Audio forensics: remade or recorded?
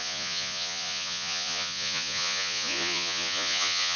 remade